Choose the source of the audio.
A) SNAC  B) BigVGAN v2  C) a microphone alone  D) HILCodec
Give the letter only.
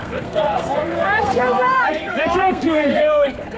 A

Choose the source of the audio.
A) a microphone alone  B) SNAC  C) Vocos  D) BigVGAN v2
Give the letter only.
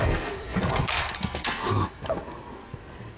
B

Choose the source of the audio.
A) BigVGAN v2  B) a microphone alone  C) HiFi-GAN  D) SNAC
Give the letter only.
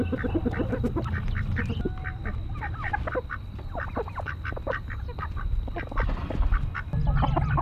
B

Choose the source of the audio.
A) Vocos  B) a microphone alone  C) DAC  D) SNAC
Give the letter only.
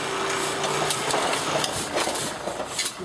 B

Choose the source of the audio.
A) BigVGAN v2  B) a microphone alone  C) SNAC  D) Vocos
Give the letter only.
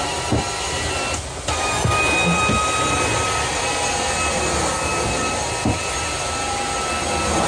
B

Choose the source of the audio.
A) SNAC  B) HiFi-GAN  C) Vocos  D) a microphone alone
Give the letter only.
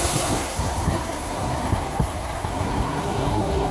A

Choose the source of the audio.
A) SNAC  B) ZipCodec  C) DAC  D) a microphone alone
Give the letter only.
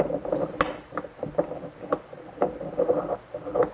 D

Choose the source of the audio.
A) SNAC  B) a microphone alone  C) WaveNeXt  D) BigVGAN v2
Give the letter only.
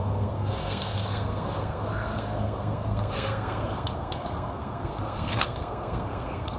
A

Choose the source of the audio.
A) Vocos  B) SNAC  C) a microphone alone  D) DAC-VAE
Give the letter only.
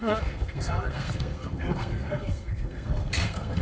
B